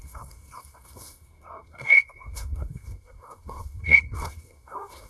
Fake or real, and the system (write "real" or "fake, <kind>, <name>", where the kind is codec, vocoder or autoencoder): fake, codec, SNAC